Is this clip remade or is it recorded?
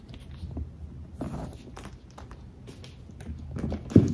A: recorded